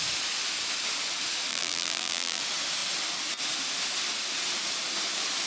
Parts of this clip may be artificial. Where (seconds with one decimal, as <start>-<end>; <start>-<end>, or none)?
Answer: 1.5-2.4